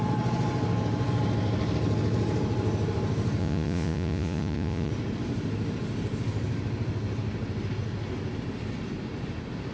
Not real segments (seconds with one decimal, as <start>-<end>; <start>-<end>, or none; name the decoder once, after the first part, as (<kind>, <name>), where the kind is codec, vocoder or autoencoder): 3.4-4.9 (vocoder, Vocos)